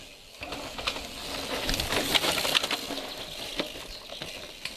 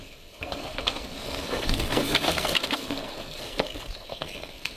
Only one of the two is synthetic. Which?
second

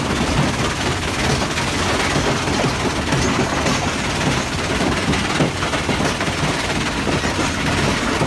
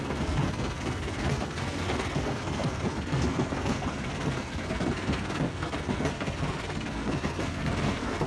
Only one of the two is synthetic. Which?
second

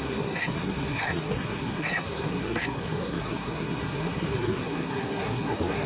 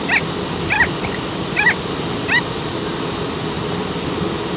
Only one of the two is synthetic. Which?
first